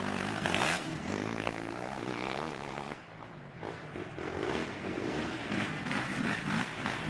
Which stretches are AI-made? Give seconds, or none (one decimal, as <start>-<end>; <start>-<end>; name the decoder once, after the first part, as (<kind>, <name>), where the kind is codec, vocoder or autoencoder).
0.0-3.1 (codec, SNAC); 3.7-7.1